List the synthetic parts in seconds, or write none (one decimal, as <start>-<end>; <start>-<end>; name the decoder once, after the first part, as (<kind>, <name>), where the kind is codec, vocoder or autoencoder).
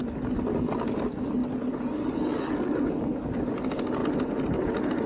none